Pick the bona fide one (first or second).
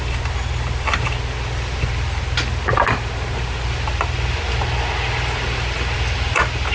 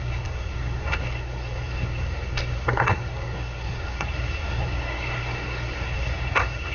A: first